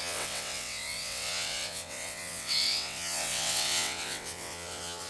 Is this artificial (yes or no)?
yes